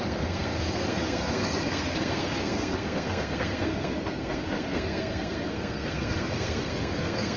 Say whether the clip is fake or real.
fake